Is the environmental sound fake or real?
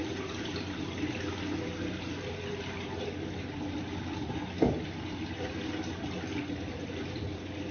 real